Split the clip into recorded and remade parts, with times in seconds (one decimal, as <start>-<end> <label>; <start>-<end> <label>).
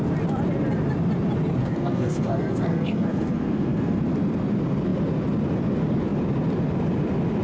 0.0-1.6 recorded; 1.6-4.0 remade; 4.0-7.4 recorded